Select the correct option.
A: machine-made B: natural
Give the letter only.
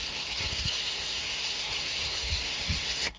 A